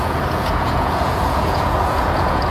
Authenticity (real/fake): fake